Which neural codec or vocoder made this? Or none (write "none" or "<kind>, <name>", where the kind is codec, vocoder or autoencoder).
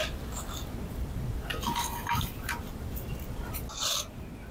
none